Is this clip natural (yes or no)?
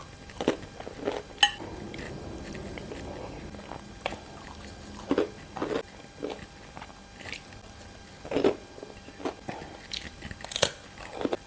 yes